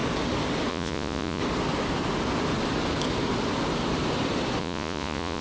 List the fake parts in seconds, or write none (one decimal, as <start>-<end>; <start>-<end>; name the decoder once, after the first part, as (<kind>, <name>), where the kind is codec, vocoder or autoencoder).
0.7-1.4 (vocoder, Vocos); 4.6-5.4